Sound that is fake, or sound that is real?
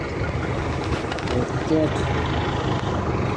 real